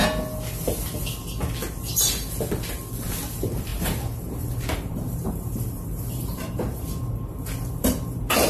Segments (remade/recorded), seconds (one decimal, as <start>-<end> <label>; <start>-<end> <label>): 0.0-3.3 recorded; 3.3-8.5 remade